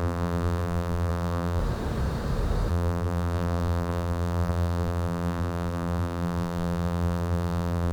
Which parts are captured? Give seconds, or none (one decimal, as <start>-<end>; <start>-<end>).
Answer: 1.6-2.7